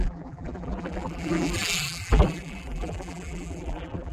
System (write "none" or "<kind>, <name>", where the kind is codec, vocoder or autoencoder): vocoder, BigVGAN v2